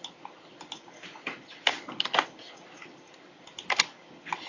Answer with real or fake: real